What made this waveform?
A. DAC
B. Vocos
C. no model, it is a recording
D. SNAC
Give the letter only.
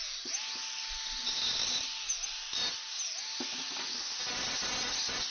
C